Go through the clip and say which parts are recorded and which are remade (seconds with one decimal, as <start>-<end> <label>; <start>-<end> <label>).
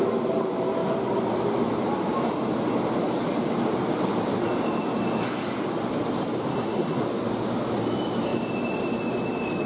0.0-6.5 recorded; 6.5-7.0 remade; 7.0-9.7 recorded